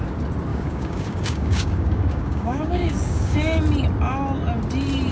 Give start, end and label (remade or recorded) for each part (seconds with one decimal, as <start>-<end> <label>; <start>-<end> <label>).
0.0-0.5 recorded; 0.5-3.6 remade; 3.6-5.1 recorded